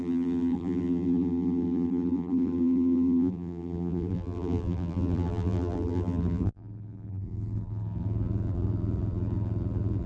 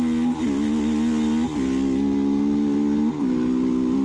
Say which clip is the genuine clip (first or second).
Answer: second